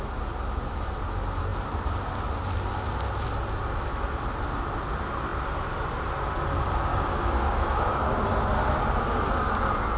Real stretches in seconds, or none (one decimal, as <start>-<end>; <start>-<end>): 0.0-6.9; 8.4-10.0